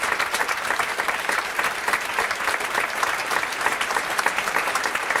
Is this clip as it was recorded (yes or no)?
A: no